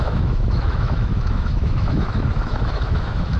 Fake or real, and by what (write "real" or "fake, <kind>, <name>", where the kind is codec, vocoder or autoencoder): fake, autoencoder, DAC-VAE